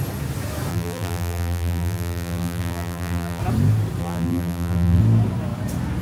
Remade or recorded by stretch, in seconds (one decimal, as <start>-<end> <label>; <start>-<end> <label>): 0.0-0.7 recorded; 0.7-3.4 remade; 3.4-4.0 recorded; 4.0-5.0 remade; 5.0-6.0 recorded